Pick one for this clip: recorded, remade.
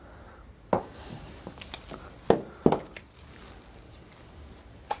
recorded